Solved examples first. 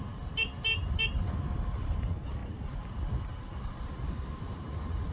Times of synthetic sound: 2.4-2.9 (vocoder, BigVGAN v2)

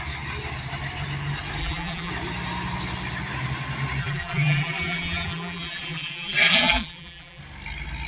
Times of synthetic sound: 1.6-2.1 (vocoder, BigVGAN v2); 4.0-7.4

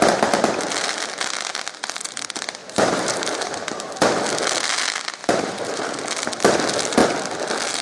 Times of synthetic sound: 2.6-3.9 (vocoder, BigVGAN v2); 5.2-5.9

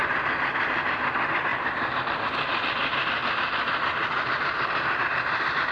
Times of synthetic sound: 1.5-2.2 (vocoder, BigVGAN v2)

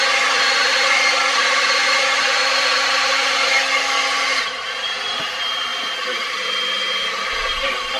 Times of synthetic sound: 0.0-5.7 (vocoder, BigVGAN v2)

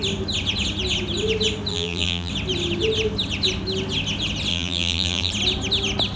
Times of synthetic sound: 1.7-2.3 (vocoder, BigVGAN v2); 4.5-5.3

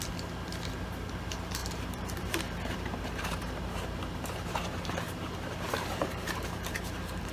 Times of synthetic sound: 1.6-5.3 (vocoder, BigVGAN v2); 6.0-7.3